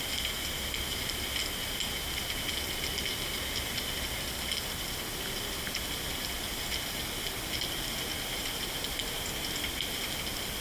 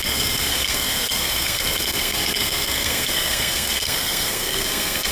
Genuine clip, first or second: first